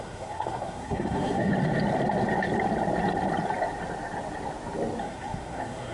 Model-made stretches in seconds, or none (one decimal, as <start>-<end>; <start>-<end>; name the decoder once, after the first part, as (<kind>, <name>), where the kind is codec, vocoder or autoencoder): 0.0-1.5 (codec, SNAC); 5.0-5.9